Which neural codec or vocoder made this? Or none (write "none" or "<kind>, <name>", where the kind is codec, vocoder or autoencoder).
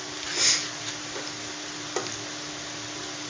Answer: none